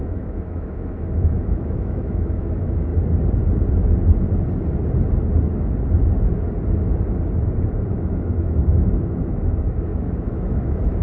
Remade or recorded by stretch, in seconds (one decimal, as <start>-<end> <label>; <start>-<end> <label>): 0.0-2.9 remade; 2.9-7.9 recorded; 7.9-11.0 remade